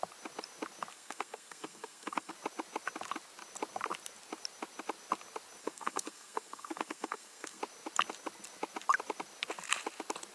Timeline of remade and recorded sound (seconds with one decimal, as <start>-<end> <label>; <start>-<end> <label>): 0.0-0.9 recorded; 0.9-2.3 remade; 2.3-5.6 recorded; 5.6-7.6 remade; 7.6-10.3 recorded